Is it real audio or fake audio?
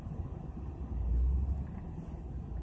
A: real